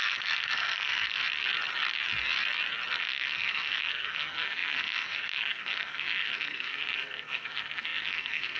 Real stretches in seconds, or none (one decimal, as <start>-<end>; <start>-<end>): 1.2-3.0